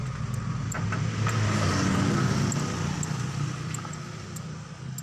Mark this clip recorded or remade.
recorded